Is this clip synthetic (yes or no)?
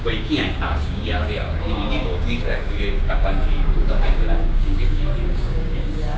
yes